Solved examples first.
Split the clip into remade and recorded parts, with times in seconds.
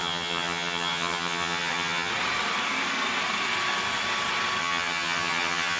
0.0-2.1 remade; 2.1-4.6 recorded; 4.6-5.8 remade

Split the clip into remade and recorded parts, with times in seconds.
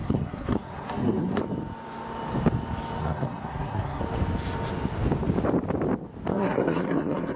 0.0-1.4 remade; 1.4-3.0 recorded; 3.0-4.0 remade; 4.0-6.3 recorded; 6.3-7.4 remade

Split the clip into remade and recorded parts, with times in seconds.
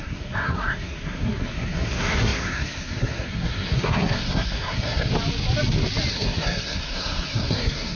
0.0-5.1 remade; 5.1-6.1 recorded; 6.1-8.0 remade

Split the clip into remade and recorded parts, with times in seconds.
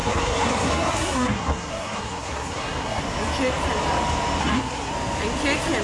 0.0-3.0 remade; 3.0-4.4 recorded; 4.4-4.9 remade; 4.9-5.8 recorded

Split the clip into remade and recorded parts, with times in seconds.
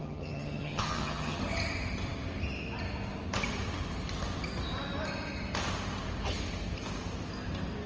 0.0-1.4 remade; 1.4-7.9 recorded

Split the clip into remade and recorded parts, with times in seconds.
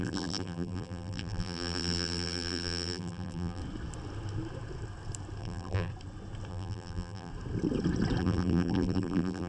0.0-3.6 remade; 3.6-5.4 recorded; 5.4-5.9 remade; 5.9-6.5 recorded; 6.5-7.3 remade; 7.3-8.2 recorded; 8.2-9.5 remade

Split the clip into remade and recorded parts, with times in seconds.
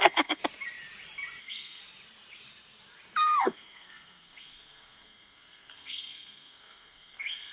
0.0-0.4 remade; 0.4-1.4 recorded; 1.4-1.8 remade; 1.8-3.4 recorded; 3.4-7.5 remade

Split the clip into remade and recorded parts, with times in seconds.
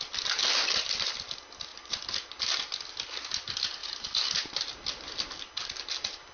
0.0-6.3 recorded